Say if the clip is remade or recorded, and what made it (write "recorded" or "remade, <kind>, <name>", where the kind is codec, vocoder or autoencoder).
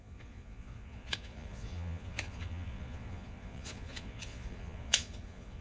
remade, vocoder, Vocos